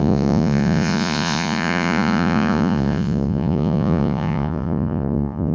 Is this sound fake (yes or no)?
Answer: yes